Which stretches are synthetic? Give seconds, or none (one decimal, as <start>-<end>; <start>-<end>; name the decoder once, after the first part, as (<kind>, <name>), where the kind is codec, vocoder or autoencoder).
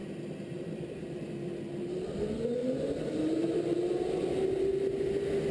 2.6-3.6 (vocoder, BigVGAN v2)